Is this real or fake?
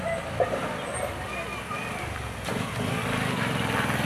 real